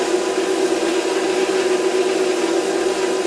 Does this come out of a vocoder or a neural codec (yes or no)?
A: no